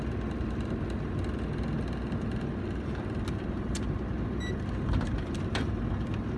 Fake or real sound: real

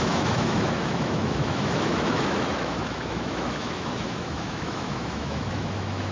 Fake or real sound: fake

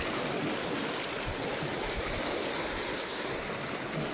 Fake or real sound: real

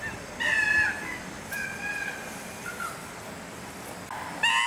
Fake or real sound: real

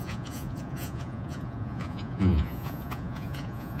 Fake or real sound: fake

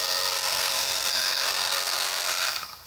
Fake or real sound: fake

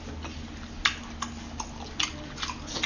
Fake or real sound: real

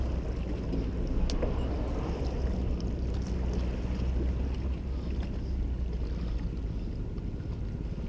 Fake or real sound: real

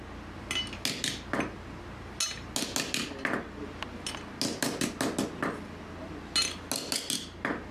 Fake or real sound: real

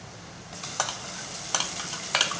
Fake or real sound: real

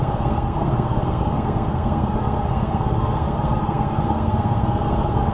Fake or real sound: fake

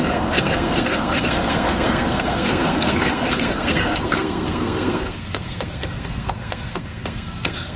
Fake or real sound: fake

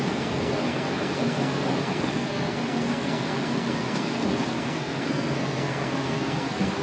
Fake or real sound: fake